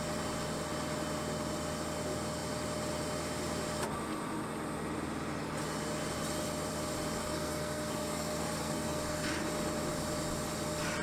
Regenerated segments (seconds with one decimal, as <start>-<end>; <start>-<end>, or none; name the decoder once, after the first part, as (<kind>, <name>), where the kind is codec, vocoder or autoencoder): 7.2-9.4 (codec, SNAC)